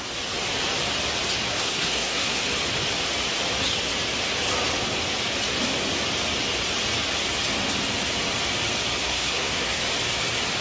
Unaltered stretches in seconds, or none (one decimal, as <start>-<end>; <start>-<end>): 0.0-1.5; 2.4-9.0; 9.8-10.6